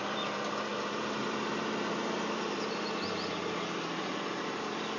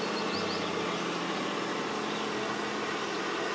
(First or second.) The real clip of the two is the second